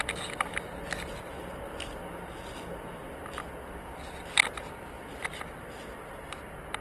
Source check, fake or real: real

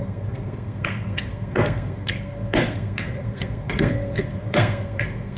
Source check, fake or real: fake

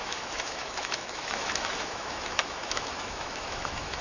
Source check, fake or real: fake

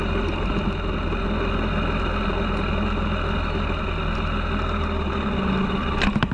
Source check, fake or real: real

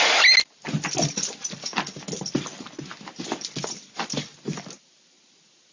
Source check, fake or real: real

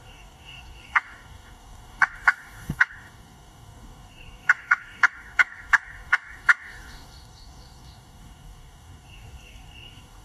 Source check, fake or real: fake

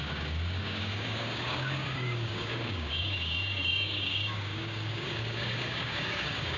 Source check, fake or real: fake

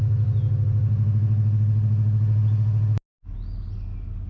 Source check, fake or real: real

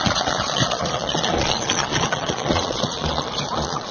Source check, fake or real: fake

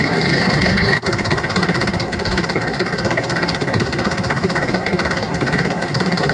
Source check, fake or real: fake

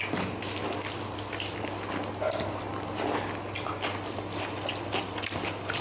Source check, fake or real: real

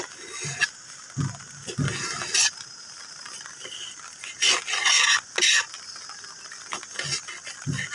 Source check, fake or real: real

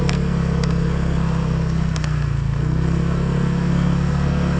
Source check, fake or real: fake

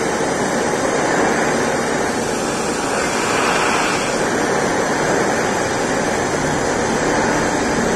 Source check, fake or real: real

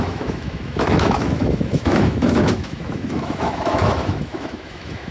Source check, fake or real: fake